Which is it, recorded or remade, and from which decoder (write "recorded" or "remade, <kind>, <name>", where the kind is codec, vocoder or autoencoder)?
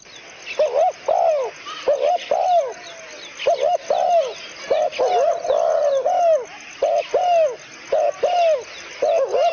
recorded